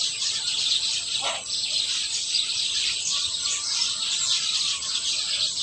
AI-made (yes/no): yes